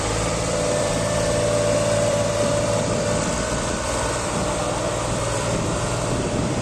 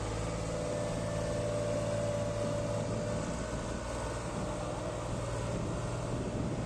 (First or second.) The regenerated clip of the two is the first